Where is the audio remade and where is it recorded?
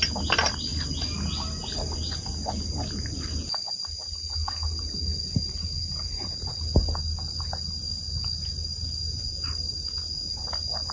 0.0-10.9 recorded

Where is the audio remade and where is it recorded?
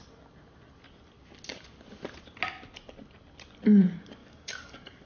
0.0-4.2 recorded; 4.2-5.1 remade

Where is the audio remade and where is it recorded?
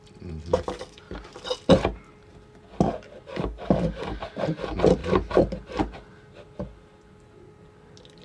0.0-0.5 recorded; 0.5-1.0 remade; 1.0-3.3 recorded; 3.3-4.2 remade; 4.2-8.2 recorded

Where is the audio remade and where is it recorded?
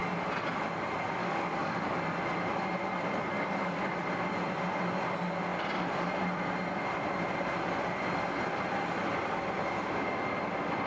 0.0-1.2 recorded; 1.2-2.0 remade; 2.0-3.3 recorded; 3.3-3.9 remade; 3.9-10.9 recorded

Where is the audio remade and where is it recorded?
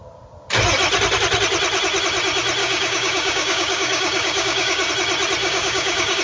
0.0-2.6 recorded; 2.6-4.9 remade; 4.9-5.4 recorded; 5.4-6.2 remade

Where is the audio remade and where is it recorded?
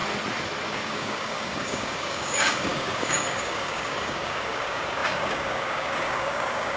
0.0-0.7 recorded; 0.7-6.8 remade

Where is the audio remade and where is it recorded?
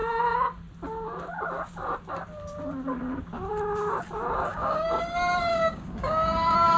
0.0-4.5 recorded; 4.5-5.0 remade; 5.0-5.5 recorded; 5.5-6.8 remade